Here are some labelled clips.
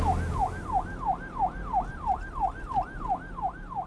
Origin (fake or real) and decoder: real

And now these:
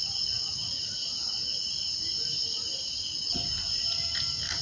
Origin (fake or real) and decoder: real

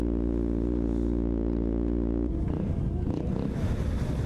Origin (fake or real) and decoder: real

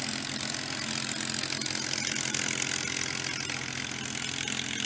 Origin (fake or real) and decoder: real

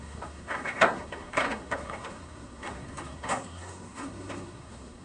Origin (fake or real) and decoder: fake, codec, SNAC